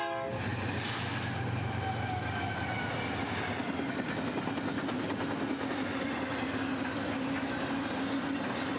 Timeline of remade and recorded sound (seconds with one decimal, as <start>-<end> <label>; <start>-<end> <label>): 0.0-8.8 recorded